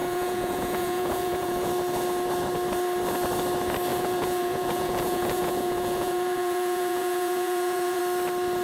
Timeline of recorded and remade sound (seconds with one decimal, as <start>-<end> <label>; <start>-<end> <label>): 0.0-1.7 remade; 1.7-3.9 recorded; 3.9-8.0 remade; 8.0-8.6 recorded